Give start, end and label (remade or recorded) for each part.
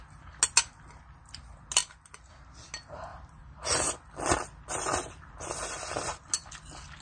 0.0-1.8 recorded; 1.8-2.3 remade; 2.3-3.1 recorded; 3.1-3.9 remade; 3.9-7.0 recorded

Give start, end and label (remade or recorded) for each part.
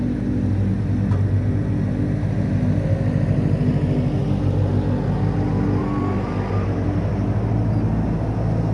0.0-0.7 recorded; 0.7-1.5 remade; 1.5-8.7 recorded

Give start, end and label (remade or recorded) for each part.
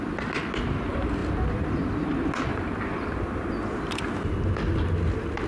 0.0-2.5 recorded; 2.5-3.5 remade; 3.5-5.5 recorded